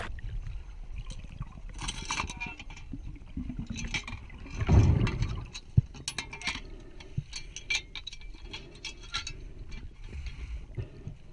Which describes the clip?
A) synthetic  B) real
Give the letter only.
B